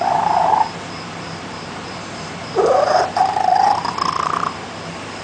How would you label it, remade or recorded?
remade